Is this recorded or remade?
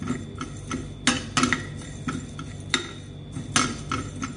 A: recorded